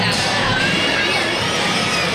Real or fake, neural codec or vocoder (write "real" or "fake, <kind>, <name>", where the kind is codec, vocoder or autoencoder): fake, vocoder, BigVGAN v2